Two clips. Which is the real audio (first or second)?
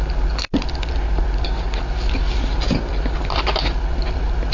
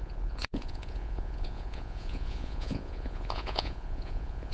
first